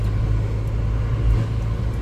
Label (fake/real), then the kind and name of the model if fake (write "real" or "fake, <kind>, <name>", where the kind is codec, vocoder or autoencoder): real